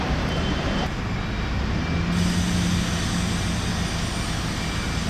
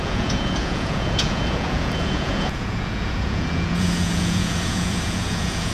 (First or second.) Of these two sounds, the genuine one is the first